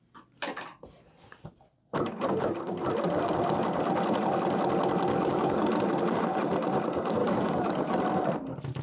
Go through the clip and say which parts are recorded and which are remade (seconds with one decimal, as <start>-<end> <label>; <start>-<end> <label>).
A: 0.0-5.1 recorded; 5.1-5.7 remade; 5.7-7.2 recorded; 7.2-8.0 remade; 8.0-8.8 recorded